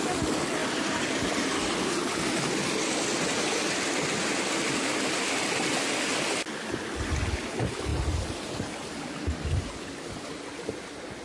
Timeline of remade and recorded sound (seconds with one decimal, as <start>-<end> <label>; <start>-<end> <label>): 0.0-11.2 recorded